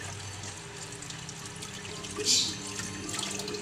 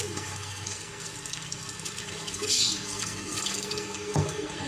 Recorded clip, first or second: first